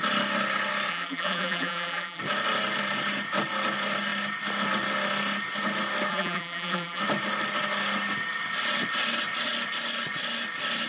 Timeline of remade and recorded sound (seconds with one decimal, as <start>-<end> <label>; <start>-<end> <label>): 0.0-0.9 recorded; 0.9-2.2 remade; 2.2-6.1 recorded; 6.1-7.0 remade; 7.0-10.9 recorded